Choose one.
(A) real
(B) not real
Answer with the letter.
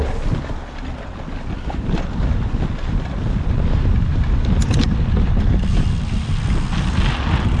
A